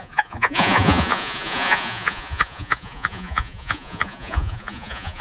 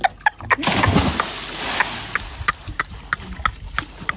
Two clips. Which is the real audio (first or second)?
second